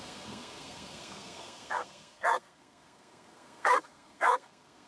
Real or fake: fake